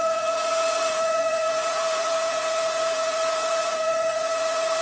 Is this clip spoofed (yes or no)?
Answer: yes